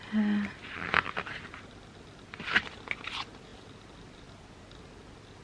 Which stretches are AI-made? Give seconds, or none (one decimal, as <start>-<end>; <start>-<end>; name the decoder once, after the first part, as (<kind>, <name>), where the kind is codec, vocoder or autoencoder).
none